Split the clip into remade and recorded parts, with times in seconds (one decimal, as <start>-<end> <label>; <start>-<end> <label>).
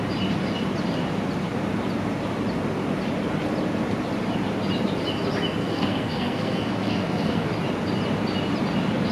0.0-5.6 recorded; 5.6-7.5 remade; 7.5-9.1 recorded